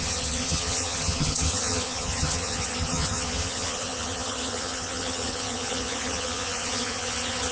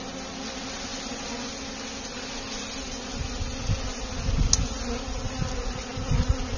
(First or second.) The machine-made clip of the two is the first